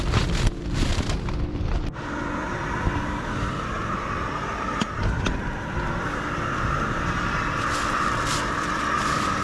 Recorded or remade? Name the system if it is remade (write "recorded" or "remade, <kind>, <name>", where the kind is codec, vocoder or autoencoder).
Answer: remade, vocoder, BigVGAN v2